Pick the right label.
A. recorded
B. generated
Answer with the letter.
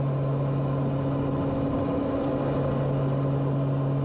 A